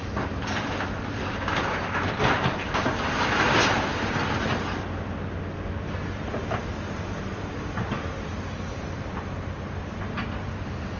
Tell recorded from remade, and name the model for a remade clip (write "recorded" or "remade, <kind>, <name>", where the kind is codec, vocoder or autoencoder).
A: recorded